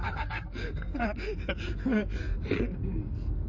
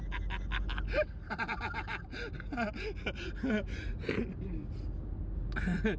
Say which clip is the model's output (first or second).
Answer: first